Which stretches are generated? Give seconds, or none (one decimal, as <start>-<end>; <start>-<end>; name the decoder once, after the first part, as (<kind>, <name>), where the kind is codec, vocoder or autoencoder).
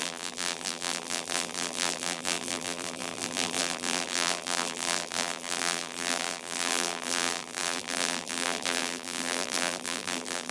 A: 0.0-10.5 (vocoder, BigVGAN v2)